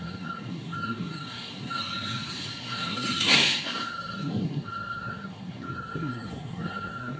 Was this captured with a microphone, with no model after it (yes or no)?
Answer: no